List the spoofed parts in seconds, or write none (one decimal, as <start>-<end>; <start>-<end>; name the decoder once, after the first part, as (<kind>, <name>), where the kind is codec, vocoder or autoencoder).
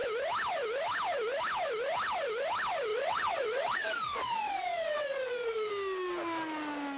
2.9-5.7 (vocoder, WaveNeXt)